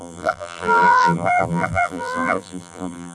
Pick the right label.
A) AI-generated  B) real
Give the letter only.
A